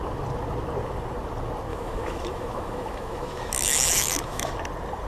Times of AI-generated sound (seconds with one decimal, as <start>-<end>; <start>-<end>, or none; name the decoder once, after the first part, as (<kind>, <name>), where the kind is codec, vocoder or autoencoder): 1.7-4.5 (autoencoder, DAC-VAE)